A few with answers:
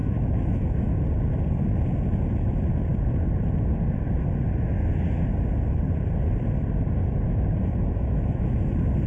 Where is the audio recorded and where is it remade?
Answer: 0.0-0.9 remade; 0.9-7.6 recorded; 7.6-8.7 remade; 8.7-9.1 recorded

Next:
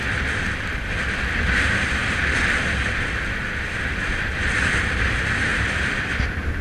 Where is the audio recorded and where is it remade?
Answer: 0.0-6.6 recorded

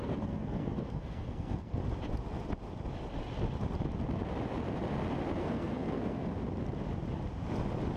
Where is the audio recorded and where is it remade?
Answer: 0.0-1.8 remade; 1.8-5.4 recorded; 5.4-6.4 remade; 6.4-8.0 recorded

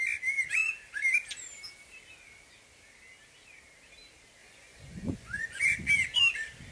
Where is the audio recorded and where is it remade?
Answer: 0.0-4.4 recorded; 4.4-5.9 remade; 5.9-6.7 recorded

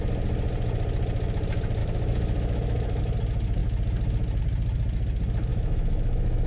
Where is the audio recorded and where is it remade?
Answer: 0.0-1.8 recorded; 1.8-3.0 remade; 3.0-5.5 recorded; 5.5-6.5 remade